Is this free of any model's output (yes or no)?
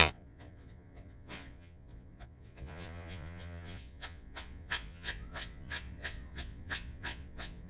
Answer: no